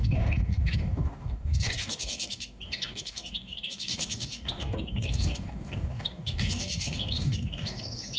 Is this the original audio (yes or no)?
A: no